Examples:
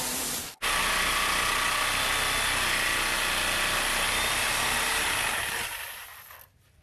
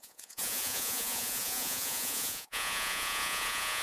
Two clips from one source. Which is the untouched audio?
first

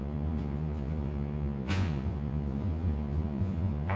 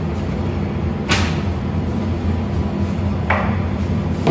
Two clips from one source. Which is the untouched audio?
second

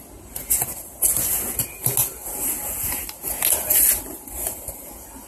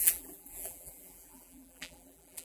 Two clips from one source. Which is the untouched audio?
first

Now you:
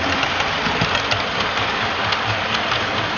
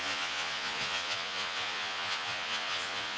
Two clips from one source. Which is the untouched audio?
first